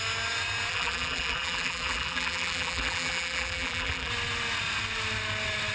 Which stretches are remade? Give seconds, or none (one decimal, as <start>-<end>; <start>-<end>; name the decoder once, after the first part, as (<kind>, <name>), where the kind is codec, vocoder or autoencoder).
0.7-4.1 (vocoder, BigVGAN v2)